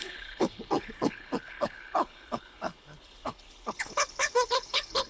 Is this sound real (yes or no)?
no